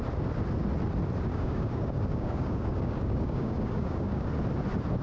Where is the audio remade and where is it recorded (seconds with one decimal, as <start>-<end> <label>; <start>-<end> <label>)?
0.0-1.3 recorded; 1.3-4.3 remade; 4.3-5.0 recorded